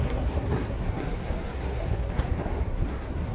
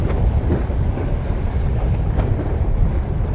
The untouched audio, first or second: second